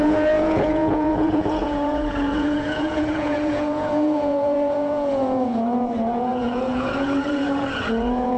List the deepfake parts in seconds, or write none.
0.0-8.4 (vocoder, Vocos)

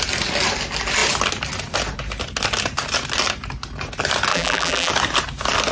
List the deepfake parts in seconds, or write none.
4.3-4.9 (vocoder, BigVGAN v2)

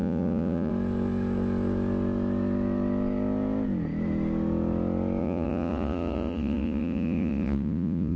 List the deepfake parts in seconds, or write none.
0.0-0.7 (vocoder, Vocos); 5.2-8.2

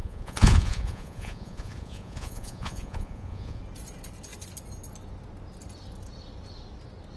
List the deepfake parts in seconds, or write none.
0.0-3.6 (vocoder, Vocos)